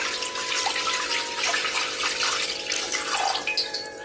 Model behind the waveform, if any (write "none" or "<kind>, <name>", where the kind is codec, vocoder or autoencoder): none